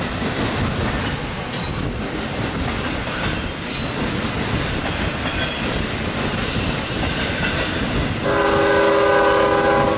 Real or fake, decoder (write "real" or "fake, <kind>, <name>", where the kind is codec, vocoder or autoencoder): real